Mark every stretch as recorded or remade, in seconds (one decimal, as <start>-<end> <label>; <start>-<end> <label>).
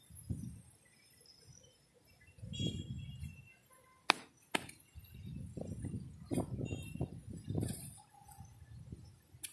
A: 0.0-9.5 recorded